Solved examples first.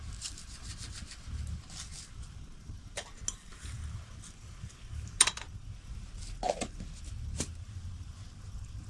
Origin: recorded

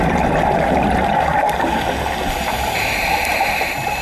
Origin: recorded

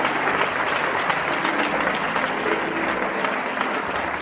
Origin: recorded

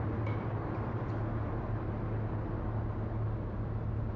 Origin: recorded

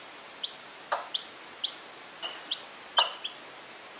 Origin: recorded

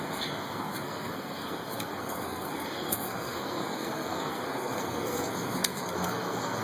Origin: remade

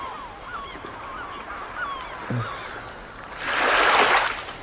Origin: recorded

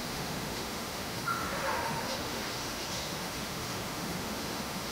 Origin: remade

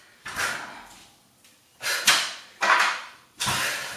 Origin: recorded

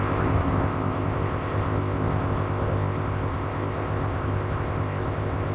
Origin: remade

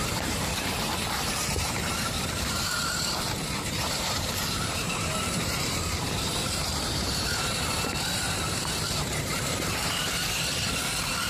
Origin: remade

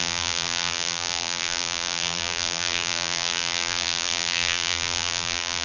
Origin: remade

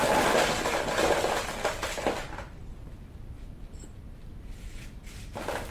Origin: recorded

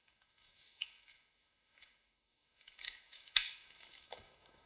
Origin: remade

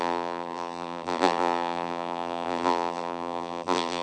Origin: remade